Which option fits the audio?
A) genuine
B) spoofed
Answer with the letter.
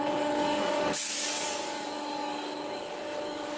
B